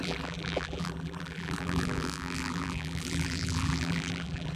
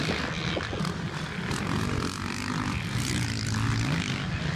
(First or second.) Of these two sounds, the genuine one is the second